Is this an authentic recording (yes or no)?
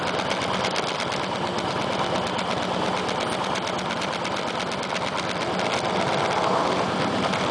yes